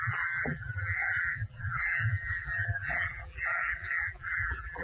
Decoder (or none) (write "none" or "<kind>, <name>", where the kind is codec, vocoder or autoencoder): vocoder, BigVGAN v2